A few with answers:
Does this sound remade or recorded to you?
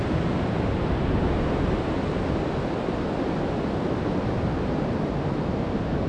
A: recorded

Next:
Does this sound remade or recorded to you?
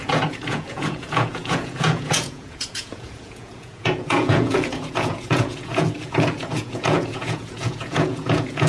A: remade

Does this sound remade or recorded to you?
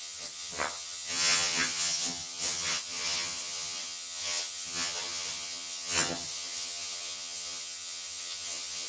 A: remade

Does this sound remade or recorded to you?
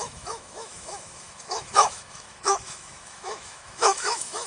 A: remade